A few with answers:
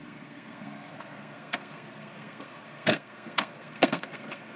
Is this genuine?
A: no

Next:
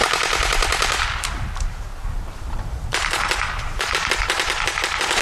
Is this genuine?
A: no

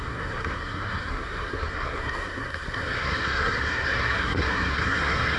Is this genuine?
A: no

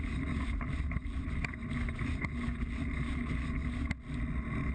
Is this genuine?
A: yes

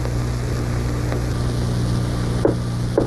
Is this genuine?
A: yes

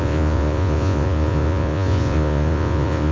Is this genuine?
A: no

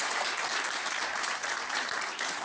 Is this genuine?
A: no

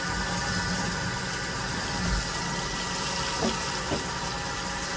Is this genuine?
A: yes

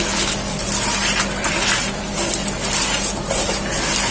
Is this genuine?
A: yes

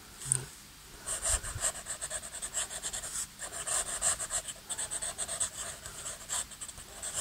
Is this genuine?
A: yes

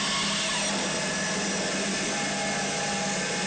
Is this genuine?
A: yes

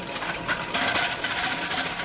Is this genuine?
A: yes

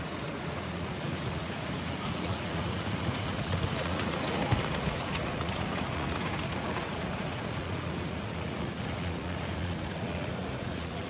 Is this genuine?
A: no